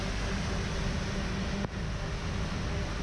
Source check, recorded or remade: recorded